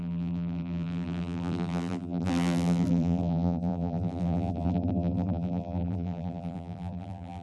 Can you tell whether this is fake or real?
fake